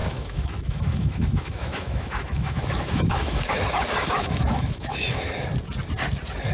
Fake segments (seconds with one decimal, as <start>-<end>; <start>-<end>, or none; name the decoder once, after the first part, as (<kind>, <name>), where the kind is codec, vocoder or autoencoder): 0.0-3.5 (autoencoder, DAC-VAE); 4.0-5.3